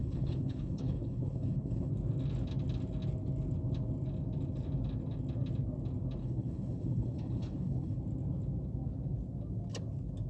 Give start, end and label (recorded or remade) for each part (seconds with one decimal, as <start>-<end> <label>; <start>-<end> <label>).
0.0-1.9 remade; 1.9-6.2 recorded; 6.2-8.0 remade; 8.0-10.3 recorded